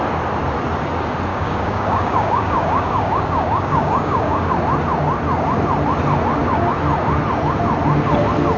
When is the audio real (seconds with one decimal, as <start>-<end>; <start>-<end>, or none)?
0.0-1.3; 4.5-8.6